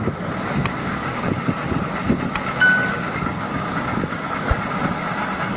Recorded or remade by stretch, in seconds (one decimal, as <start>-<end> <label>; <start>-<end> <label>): 0.0-0.8 recorded; 0.8-1.4 remade; 1.4-2.9 recorded; 2.9-4.4 remade; 4.4-5.6 recorded